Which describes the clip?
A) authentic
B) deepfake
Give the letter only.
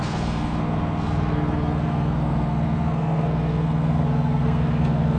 B